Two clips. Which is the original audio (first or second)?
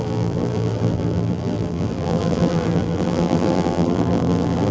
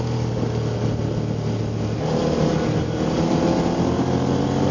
second